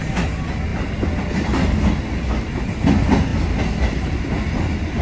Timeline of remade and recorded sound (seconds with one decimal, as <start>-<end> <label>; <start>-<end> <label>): 0.0-5.0 recorded